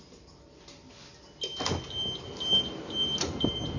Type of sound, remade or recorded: recorded